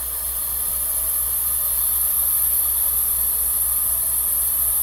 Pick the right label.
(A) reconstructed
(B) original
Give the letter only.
B